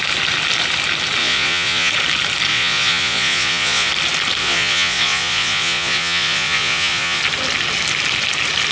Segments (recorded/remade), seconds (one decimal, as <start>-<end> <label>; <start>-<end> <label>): 0.0-1.2 recorded; 1.2-1.9 remade; 1.9-2.5 recorded; 2.5-3.9 remade; 3.9-4.4 recorded; 4.4-7.2 remade; 7.2-8.7 recorded